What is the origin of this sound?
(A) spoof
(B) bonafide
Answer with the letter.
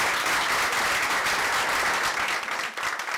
B